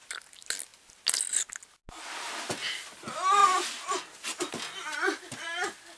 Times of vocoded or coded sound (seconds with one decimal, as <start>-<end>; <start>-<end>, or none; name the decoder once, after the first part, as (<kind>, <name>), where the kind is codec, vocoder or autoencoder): none